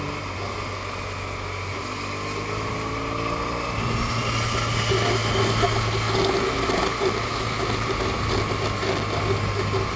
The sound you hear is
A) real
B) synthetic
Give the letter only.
A